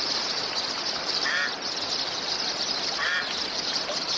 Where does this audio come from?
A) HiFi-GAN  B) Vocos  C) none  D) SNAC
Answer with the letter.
C